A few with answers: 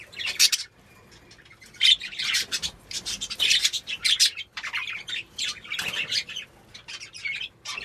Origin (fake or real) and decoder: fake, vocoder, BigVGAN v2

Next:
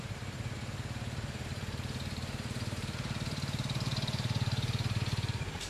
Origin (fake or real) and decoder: fake, vocoder, BigVGAN v2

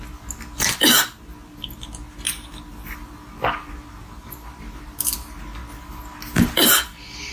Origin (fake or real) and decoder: real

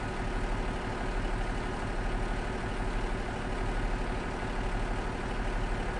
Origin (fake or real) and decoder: real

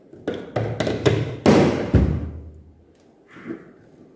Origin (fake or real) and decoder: real